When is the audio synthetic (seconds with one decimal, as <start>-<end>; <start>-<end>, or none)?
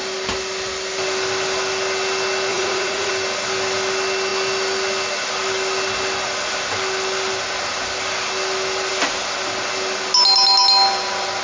2.5-3.1